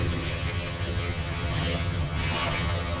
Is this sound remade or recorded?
remade